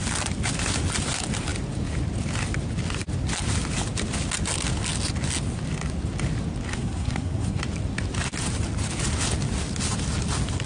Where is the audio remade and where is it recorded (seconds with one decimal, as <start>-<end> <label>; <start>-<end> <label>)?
0.0-6.7 recorded; 6.7-7.6 remade; 7.6-10.7 recorded